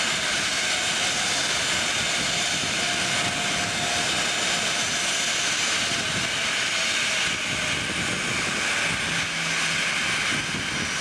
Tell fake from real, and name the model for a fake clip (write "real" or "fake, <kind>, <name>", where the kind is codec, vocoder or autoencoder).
real